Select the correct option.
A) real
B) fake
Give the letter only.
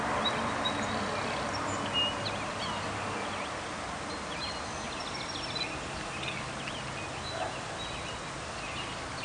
A